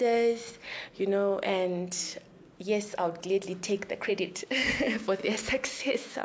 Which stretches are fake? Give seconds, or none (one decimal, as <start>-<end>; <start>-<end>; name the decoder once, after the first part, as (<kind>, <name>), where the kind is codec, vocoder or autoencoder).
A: 0.0-0.4 (autoencoder, DAC-VAE); 4.1-5.2; 5.8-6.2